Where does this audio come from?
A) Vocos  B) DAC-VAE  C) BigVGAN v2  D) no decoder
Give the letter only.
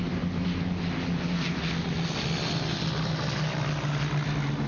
D